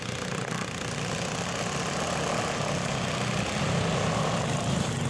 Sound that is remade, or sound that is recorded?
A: recorded